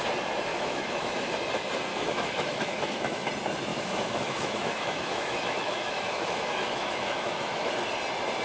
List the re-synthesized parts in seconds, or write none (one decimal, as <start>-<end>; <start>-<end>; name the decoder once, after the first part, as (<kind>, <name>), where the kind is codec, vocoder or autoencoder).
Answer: 0.5-1.3 (autoencoder, DAC-VAE); 1.9-3.3; 3.7-7.7